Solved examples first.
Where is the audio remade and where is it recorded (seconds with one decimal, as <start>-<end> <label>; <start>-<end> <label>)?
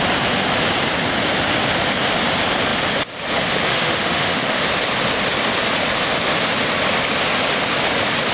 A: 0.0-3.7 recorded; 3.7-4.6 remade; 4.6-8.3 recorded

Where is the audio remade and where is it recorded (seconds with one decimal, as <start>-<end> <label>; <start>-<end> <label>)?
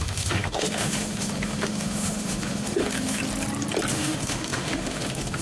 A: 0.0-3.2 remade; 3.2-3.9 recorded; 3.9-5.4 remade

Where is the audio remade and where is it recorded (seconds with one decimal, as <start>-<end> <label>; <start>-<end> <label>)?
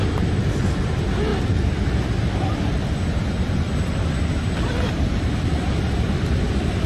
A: 0.0-6.9 recorded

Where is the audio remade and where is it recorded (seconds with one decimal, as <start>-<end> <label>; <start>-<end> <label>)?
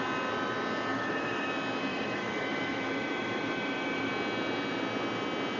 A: 0.0-0.9 recorded; 0.9-1.5 remade; 1.5-1.9 recorded; 1.9-4.1 remade; 4.1-5.6 recorded